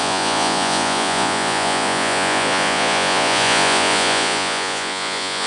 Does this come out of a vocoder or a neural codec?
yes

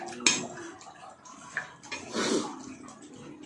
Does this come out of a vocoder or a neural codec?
no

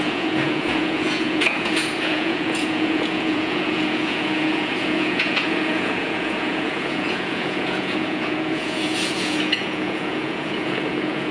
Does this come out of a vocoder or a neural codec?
yes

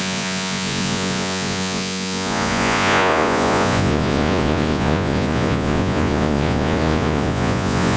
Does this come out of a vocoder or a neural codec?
yes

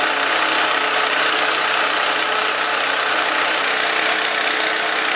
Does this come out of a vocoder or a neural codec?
no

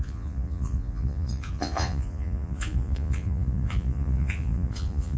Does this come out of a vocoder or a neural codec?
yes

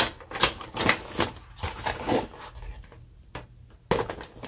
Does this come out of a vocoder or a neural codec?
no